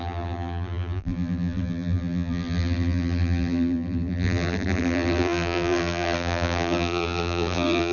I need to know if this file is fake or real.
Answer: fake